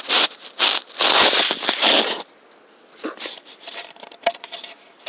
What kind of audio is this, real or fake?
real